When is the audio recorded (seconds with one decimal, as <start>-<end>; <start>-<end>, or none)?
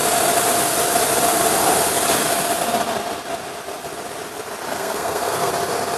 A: 0.0-4.7; 5.5-6.0